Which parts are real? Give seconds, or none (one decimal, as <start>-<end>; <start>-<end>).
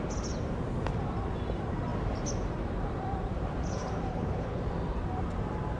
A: 0.0-4.1; 4.6-5.8